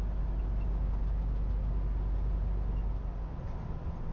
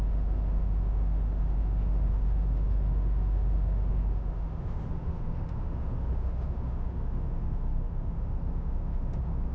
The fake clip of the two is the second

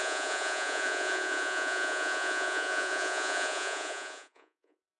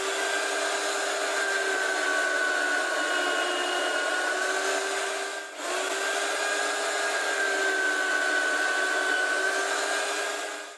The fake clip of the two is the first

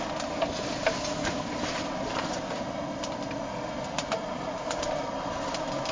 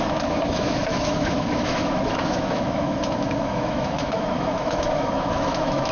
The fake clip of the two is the second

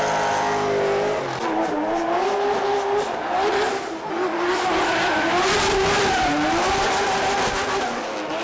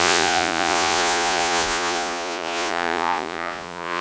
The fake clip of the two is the second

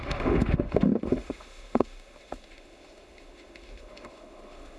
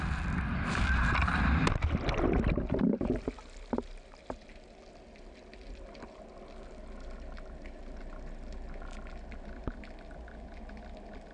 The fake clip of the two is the first